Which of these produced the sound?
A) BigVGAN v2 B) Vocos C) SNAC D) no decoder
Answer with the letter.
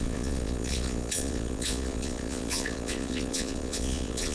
B